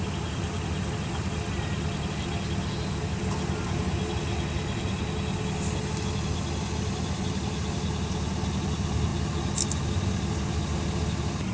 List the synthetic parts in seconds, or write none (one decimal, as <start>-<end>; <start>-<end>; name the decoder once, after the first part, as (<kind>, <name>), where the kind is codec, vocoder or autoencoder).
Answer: none